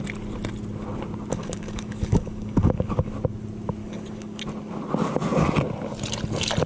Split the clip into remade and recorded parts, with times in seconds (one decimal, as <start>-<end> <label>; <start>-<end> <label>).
0.0-1.3 recorded; 1.3-3.1 remade; 3.1-3.8 recorded; 3.8-4.4 remade; 4.4-6.7 recorded